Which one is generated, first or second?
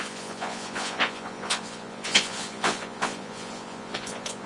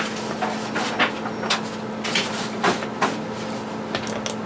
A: first